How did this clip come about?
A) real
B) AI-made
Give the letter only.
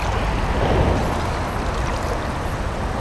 A